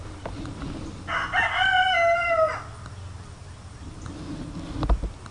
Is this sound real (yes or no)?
yes